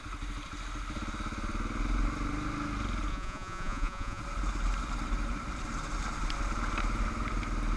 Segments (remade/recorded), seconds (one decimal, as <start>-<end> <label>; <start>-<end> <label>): 0.0-3.1 recorded; 3.1-4.2 remade; 4.2-7.8 recorded